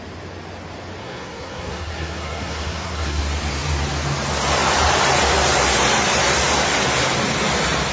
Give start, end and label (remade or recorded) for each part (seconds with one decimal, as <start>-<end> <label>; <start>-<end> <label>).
0.0-1.0 recorded; 1.0-3.2 remade; 3.2-7.9 recorded

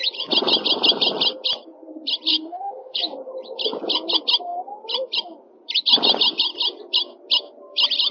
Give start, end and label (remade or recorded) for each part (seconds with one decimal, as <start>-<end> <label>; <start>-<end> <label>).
0.0-2.3 recorded; 2.3-3.0 remade; 3.0-8.1 recorded